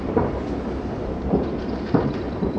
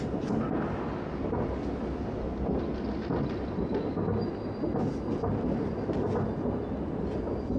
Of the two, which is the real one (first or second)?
second